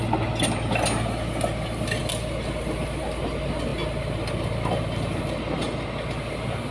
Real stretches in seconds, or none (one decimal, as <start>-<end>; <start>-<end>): 0.0-6.7